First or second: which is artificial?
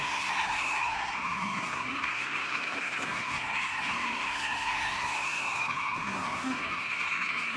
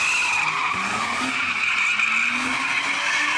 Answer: first